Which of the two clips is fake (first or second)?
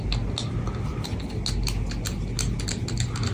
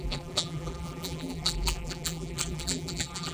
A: second